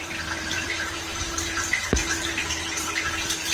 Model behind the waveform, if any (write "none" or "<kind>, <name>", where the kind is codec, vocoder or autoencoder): vocoder, BigVGAN v2